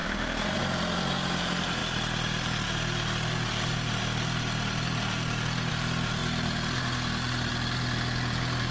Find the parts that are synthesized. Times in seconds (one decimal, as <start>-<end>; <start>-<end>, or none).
0.0-0.6; 6.2-7.5